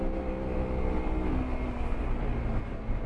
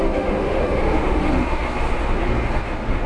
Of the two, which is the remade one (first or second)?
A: second